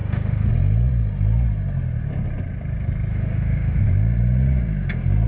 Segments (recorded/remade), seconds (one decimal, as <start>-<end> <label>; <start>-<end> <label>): 0.0-0.5 remade; 0.5-3.1 recorded; 3.1-3.9 remade; 3.9-5.3 recorded